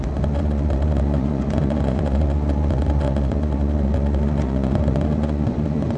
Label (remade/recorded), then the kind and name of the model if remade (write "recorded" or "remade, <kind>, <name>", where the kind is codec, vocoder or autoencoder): remade, vocoder, Vocos